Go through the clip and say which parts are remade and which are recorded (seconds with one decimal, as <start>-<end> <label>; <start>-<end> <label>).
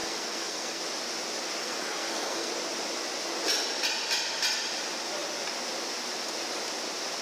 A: 0.0-0.8 remade; 0.8-1.6 recorded; 1.6-2.5 remade; 2.5-7.2 recorded